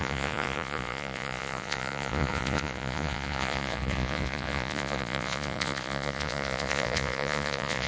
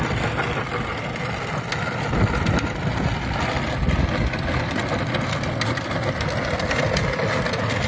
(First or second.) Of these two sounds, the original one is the second